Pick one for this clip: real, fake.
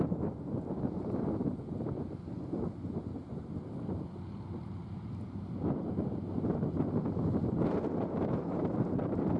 real